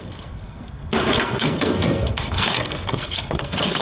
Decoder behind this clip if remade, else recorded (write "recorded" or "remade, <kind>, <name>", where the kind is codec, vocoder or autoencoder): remade, codec, SNAC